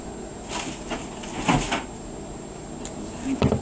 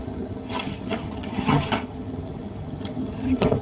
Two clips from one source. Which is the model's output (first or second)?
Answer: second